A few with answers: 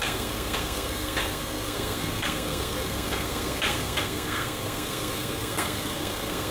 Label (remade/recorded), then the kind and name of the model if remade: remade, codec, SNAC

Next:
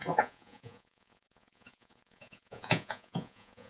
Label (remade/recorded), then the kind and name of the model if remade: remade, vocoder, Vocos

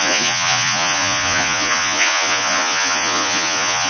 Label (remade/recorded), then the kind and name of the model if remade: remade, vocoder, Vocos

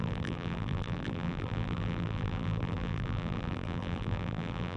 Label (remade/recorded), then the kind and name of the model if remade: remade, vocoder, BigVGAN v2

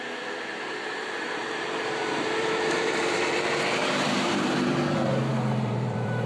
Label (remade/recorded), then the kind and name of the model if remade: remade, vocoder, BigVGAN v2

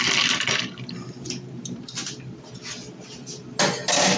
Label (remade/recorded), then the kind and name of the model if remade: recorded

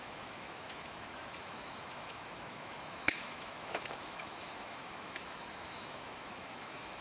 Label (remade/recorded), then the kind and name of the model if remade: remade, autoencoder, DAC-VAE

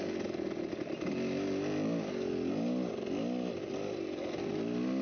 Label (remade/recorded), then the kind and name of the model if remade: recorded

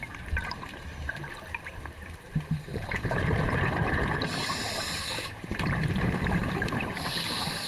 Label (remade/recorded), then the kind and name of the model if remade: remade, vocoder, BigVGAN v2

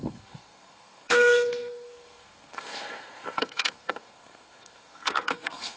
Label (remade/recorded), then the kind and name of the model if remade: remade, codec, SNAC